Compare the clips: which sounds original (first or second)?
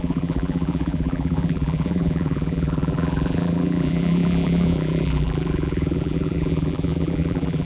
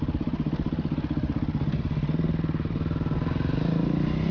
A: second